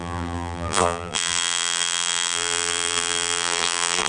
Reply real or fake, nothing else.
fake